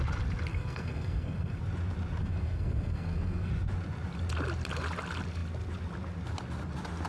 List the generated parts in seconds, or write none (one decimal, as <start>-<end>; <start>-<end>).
0.5-1.6; 2.2-3.5

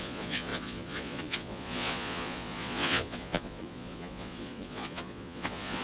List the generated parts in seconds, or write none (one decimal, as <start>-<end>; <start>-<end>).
0.0-5.8

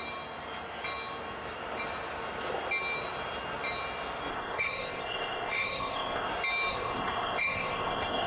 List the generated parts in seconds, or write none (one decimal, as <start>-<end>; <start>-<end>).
4.3-6.3; 6.7-8.3

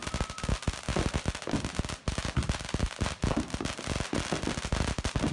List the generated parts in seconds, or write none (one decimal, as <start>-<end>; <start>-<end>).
none

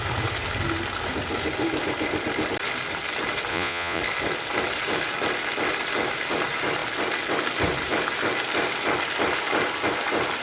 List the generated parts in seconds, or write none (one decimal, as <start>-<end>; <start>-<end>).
3.5-4.0

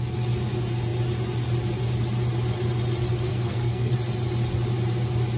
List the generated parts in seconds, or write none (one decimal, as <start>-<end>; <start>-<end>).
3.3-3.9

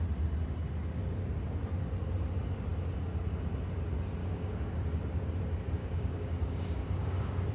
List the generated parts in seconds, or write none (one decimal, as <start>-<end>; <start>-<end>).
4.2-4.7; 5.8-7.5